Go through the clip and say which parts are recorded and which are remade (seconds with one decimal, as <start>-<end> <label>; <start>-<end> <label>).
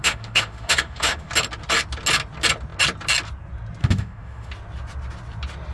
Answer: 0.0-1.3 remade; 1.3-3.8 recorded; 3.8-4.5 remade; 4.5-5.7 recorded